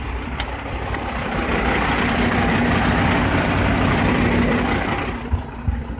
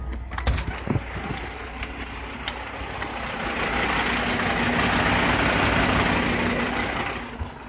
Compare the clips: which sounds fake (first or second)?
first